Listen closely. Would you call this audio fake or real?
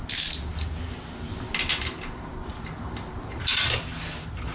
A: real